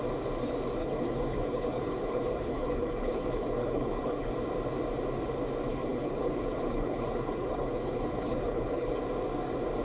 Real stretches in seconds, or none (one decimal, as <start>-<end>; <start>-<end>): 0.0-0.8; 4.3-5.7; 9.0-9.8

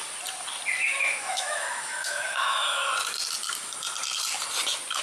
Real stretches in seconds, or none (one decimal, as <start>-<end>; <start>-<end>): 0.0-0.8; 2.9-5.0